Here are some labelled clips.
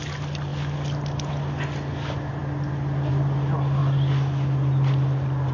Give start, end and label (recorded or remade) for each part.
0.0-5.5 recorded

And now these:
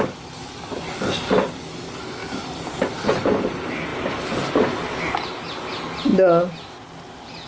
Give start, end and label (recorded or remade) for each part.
0.0-7.5 recorded

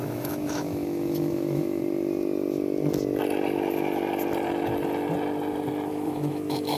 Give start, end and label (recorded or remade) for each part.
0.0-1.8 remade; 1.8-5.9 recorded; 5.9-6.8 remade

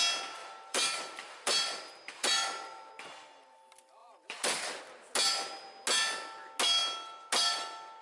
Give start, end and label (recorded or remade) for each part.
0.0-0.4 recorded; 0.4-2.9 remade; 2.9-4.0 recorded; 4.0-4.8 remade; 4.8-8.0 recorded

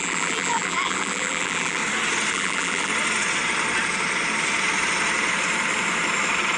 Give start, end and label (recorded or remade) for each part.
0.0-1.8 remade; 1.8-2.3 recorded; 2.3-2.9 remade; 2.9-6.6 recorded

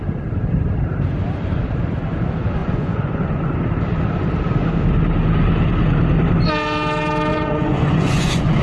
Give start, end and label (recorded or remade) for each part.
0.0-2.6 recorded; 2.6-3.5 remade; 3.5-7.3 recorded; 7.3-8.6 remade

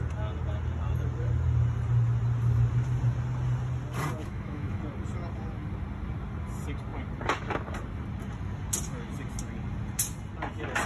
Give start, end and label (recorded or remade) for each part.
0.0-4.2 recorded; 4.2-4.8 remade; 4.8-10.9 recorded

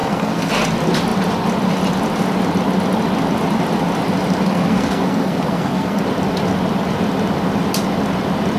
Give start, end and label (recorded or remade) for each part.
0.0-0.5 remade; 0.5-4.5 recorded; 4.5-6.0 remade; 6.0-8.6 recorded